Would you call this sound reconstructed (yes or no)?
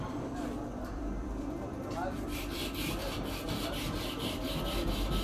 yes